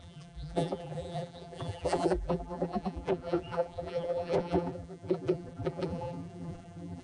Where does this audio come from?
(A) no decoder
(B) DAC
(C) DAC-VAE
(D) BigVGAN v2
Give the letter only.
D